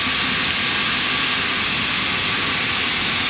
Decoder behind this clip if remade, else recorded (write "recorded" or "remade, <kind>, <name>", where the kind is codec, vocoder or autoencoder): recorded